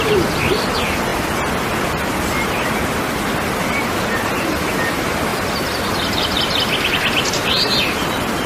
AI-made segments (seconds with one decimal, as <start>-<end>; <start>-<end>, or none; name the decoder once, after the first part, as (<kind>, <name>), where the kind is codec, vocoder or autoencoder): 0.0-1.1 (vocoder, BigVGAN v2); 4.4-8.5